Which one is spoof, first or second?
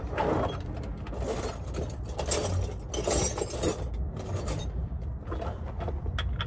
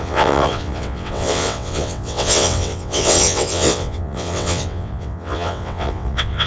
second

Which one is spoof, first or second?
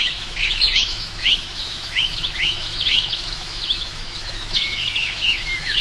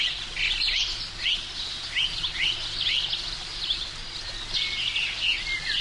first